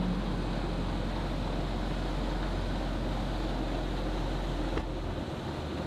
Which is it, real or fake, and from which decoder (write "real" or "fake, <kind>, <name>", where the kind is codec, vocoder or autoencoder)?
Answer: real